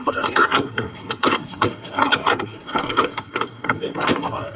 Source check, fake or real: fake